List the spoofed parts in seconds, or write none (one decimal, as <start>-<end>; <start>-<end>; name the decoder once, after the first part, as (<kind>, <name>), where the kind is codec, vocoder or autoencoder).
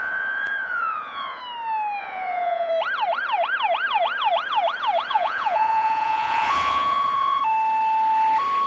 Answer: 0.0-1.4 (vocoder, Vocos); 2.0-2.7; 5.1-7.4